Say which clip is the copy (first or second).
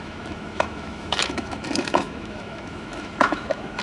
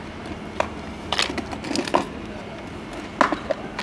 first